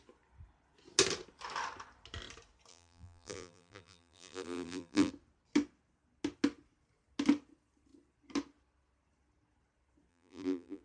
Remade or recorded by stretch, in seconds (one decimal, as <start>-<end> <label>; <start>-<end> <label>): 0.0-2.7 recorded; 2.7-5.1 remade; 5.1-10.1 recorded; 10.1-10.8 remade